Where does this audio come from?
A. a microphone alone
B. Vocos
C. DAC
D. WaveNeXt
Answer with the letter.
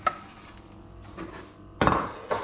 A